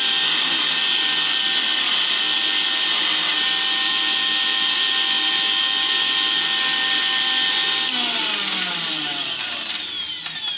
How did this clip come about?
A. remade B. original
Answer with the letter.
B